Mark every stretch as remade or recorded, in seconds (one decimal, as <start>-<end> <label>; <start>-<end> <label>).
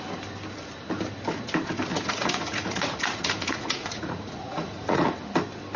0.0-1.9 recorded; 1.9-5.1 remade; 5.1-5.8 recorded